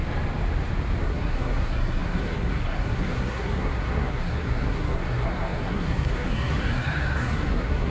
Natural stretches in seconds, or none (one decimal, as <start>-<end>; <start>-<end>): 0.0-1.0